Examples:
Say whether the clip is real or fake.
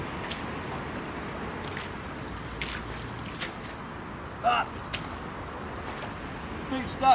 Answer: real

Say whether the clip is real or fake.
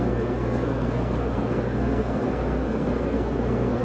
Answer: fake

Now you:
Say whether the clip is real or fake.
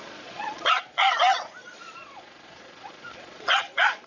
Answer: fake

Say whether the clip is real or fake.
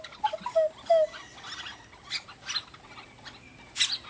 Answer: real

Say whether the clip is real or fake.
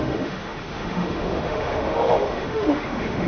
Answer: fake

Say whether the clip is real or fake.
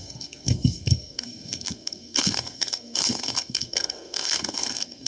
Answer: fake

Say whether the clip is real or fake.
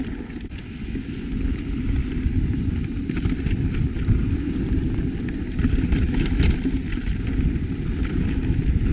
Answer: real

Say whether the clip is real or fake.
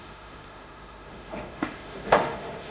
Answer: fake